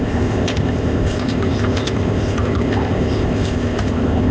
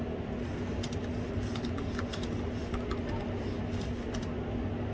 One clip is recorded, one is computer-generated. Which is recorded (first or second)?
second